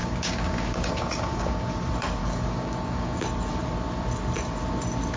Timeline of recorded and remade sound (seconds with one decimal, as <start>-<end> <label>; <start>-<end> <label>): 0.0-1.7 remade; 1.7-2.2 recorded; 2.2-3.2 remade; 3.2-5.2 recorded